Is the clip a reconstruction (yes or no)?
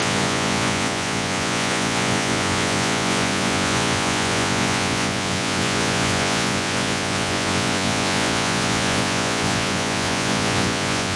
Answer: yes